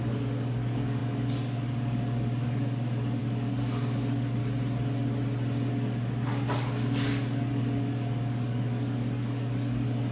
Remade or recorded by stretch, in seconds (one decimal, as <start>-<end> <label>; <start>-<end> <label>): 0.0-4.4 remade; 4.4-5.7 recorded; 5.7-10.1 remade